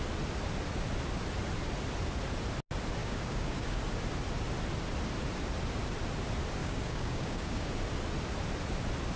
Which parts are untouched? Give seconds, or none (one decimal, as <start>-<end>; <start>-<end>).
0.0-3.0; 3.8-6.6; 7.7-9.2